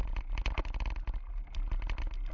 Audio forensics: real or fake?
real